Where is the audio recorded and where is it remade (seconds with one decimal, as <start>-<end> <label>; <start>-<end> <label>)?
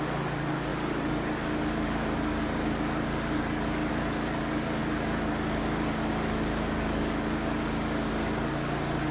0.0-9.1 remade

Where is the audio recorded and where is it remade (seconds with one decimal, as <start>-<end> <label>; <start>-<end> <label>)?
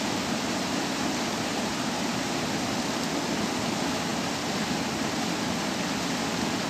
0.0-6.7 recorded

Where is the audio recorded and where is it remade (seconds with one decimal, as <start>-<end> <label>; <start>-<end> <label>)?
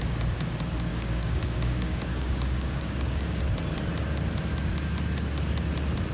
0.0-0.9 recorded; 0.9-3.4 remade; 3.4-6.1 recorded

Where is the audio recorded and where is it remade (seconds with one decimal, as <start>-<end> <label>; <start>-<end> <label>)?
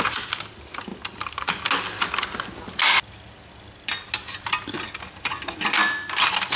0.0-6.6 recorded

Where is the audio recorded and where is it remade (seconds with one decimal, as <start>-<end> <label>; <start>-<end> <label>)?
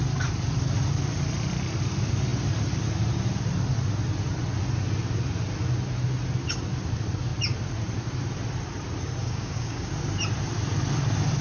0.0-9.2 recorded; 9.2-9.9 remade; 9.9-11.4 recorded